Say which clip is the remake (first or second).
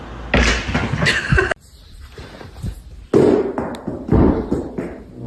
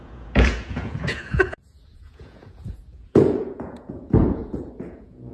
second